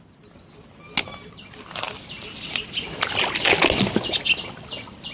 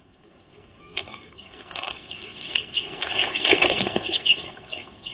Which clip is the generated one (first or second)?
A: second